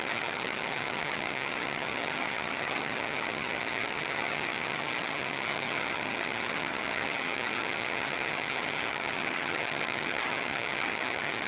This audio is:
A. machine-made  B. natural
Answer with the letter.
A